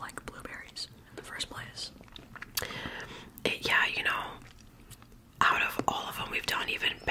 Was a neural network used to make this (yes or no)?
no